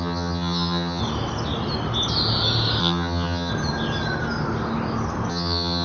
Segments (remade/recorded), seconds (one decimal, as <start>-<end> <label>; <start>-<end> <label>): 0.0-1.0 remade; 1.0-2.8 recorded; 2.8-3.5 remade; 3.5-5.3 recorded; 5.3-5.8 remade